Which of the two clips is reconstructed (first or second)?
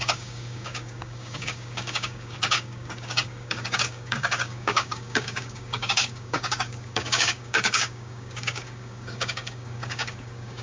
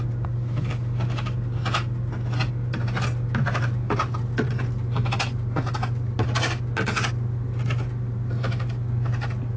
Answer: first